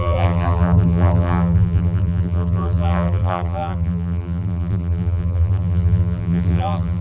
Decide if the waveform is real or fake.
fake